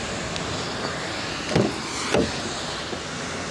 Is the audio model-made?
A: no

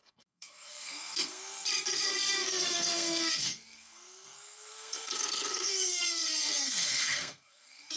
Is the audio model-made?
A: yes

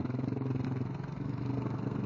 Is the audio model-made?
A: yes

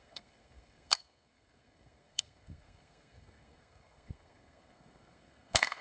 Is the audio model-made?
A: yes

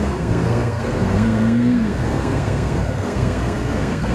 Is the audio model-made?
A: yes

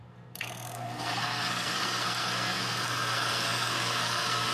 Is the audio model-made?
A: yes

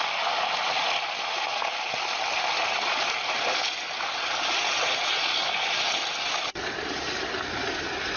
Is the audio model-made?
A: no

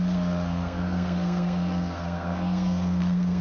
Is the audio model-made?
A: yes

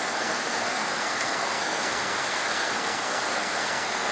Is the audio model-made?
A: yes